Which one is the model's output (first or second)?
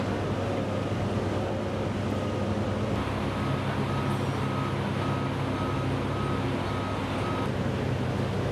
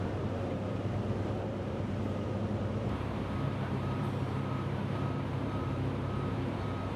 second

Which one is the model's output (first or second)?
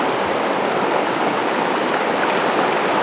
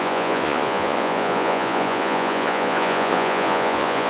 second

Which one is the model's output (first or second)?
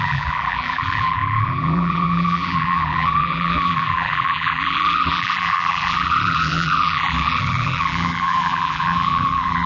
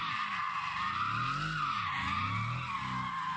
first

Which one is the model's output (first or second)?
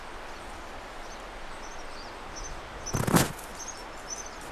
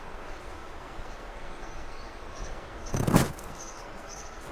second